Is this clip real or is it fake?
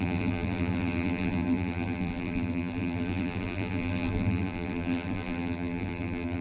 fake